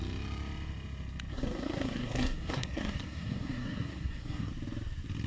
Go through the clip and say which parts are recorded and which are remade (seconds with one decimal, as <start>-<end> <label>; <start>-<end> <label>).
0.0-1.3 recorded; 1.3-4.5 remade; 4.5-5.3 recorded